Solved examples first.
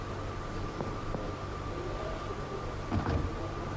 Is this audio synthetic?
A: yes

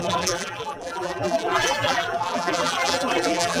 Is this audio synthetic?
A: yes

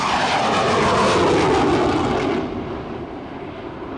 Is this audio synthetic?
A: no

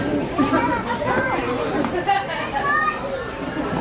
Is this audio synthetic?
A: yes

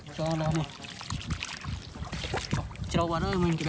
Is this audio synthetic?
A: no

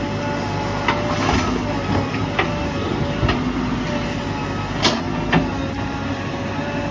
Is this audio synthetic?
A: no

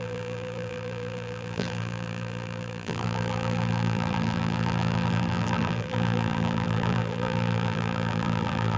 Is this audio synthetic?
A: yes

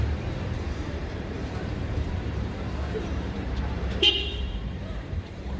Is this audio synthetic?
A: yes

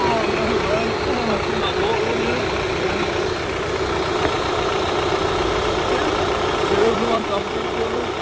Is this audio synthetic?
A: yes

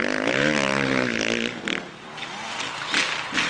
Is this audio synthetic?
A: no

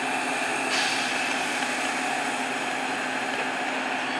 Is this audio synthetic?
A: no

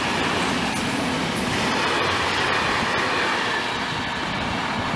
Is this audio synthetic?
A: no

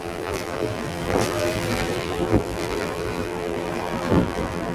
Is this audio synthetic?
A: yes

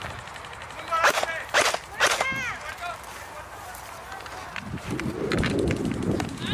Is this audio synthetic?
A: no